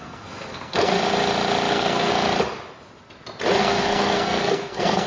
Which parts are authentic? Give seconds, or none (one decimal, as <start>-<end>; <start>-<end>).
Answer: 0.9-1.7; 2.1-3.6